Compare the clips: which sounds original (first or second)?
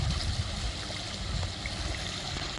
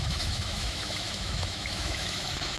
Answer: first